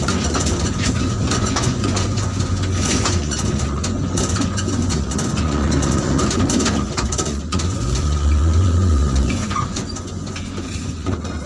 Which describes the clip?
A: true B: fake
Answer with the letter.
B